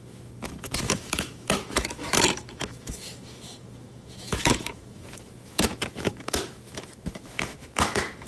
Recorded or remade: remade